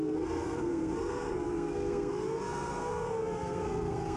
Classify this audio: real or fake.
fake